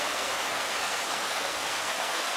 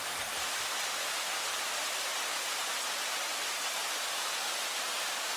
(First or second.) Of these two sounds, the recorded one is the second